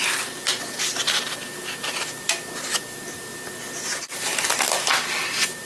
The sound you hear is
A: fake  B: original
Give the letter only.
A